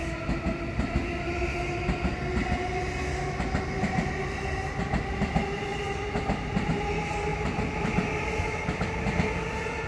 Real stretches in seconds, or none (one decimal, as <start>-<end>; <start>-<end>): 0.0-7.3; 8.1-9.9